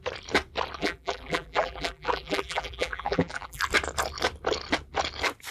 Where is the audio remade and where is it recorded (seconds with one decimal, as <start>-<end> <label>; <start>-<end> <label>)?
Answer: 0.0-0.8 recorded; 0.8-3.6 remade; 3.6-5.5 recorded

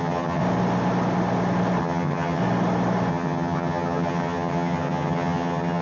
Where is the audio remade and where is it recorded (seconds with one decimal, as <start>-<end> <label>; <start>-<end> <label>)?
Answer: 0.0-0.4 remade; 0.4-1.8 recorded; 1.8-2.4 remade; 2.4-3.1 recorded; 3.1-5.8 remade